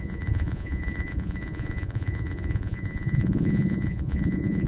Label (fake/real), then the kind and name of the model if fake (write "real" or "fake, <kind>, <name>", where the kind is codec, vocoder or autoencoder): fake, vocoder, Vocos